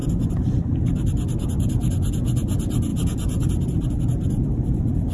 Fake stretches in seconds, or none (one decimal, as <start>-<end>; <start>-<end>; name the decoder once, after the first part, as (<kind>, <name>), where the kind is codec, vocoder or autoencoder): 0.0-0.5 (vocoder, BigVGAN v2); 2.9-4.0